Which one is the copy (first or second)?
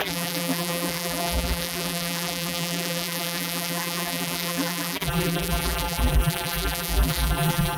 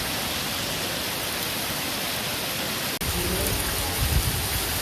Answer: first